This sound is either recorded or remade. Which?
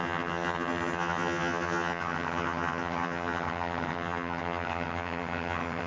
remade